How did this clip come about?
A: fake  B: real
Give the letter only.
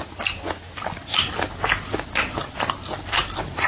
B